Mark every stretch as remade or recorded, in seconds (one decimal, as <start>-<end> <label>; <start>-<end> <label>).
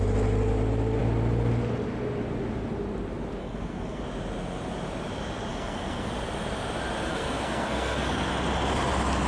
0.0-3.4 recorded; 3.4-4.0 remade; 4.0-5.5 recorded; 5.5-6.1 remade; 6.1-7.1 recorded; 7.1-8.3 remade; 8.3-9.3 recorded